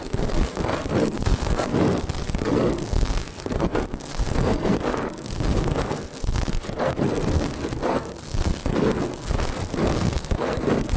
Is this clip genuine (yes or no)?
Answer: no